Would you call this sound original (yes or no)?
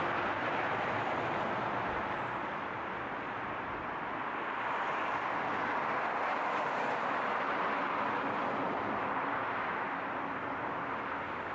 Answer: yes